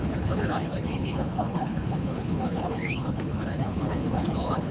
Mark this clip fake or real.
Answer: fake